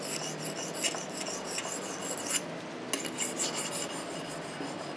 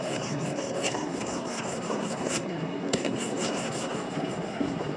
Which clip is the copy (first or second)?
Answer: second